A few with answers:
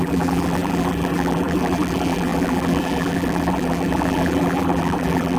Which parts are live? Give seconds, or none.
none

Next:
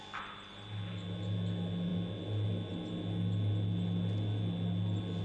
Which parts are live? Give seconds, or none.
0.0-5.2

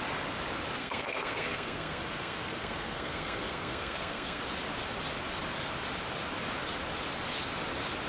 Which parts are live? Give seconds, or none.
0.0-0.8; 4.4-8.1